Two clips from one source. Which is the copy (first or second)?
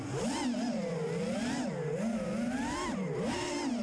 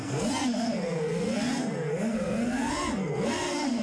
second